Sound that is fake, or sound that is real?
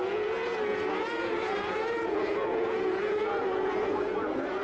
fake